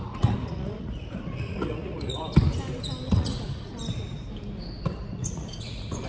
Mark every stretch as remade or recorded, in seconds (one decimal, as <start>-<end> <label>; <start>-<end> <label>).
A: 0.0-2.2 remade; 2.2-3.1 recorded; 3.1-3.8 remade; 3.8-5.0 recorded; 5.0-6.1 remade